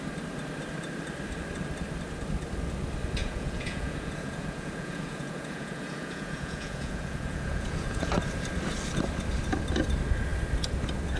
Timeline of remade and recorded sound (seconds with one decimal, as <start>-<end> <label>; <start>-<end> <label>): 0.0-3.2 recorded; 3.2-8.1 remade; 8.1-11.2 recorded

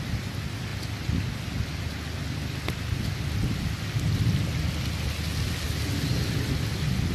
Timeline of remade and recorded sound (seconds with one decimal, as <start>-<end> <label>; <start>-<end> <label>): 0.0-7.1 recorded

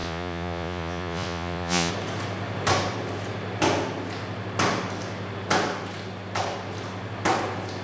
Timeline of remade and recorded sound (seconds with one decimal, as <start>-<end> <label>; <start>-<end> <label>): 0.0-1.9 remade; 1.9-7.8 recorded

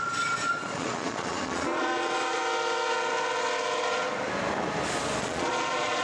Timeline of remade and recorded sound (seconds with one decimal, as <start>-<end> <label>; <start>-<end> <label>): 0.0-2.4 remade; 2.4-5.2 recorded; 5.2-6.0 remade

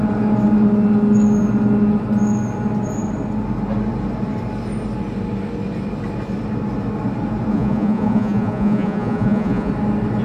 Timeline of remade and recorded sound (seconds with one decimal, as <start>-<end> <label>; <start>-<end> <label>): 0.0-7.5 recorded; 7.5-9.7 remade; 9.7-10.2 recorded

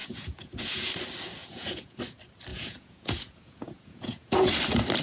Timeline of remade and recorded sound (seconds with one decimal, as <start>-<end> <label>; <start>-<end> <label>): 0.0-0.9 remade; 0.9-1.4 recorded; 1.4-2.0 remade; 2.0-2.5 recorded; 2.5-4.5 remade; 4.5-5.0 recorded

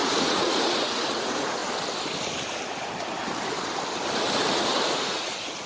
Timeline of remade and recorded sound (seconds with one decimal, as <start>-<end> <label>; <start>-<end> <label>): 0.0-1.6 remade; 1.6-4.5 recorded; 4.5-5.7 remade